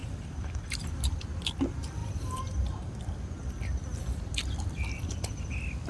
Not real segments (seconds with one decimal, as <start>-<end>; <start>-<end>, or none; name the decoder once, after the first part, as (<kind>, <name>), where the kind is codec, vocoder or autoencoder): 0.0-0.9 (vocoder, BigVGAN v2)